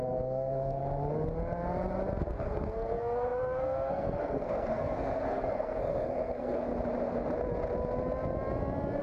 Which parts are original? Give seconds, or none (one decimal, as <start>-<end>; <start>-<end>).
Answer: 0.8-2.2; 6.7-9.0